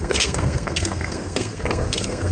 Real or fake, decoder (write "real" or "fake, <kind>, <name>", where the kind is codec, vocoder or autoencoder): fake, codec, SNAC